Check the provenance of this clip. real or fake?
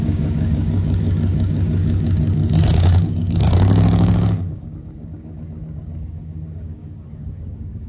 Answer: fake